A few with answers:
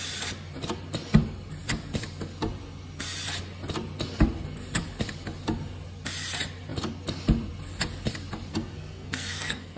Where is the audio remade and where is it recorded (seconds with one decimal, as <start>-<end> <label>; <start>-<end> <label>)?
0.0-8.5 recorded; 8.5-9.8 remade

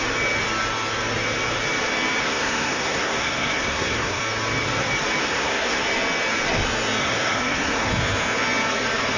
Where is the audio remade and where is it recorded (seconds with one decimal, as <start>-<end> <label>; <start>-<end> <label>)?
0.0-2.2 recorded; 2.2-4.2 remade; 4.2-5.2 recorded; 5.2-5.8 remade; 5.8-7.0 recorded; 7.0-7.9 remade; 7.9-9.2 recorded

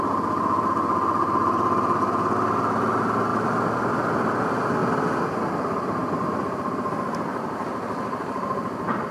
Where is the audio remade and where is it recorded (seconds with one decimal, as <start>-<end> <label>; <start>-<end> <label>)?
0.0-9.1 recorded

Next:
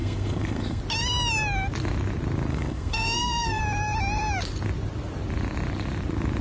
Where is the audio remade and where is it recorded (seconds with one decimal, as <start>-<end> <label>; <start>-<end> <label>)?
0.0-0.8 remade; 0.8-2.5 recorded; 2.5-3.6 remade; 3.6-6.4 recorded